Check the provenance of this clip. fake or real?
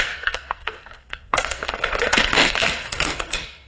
fake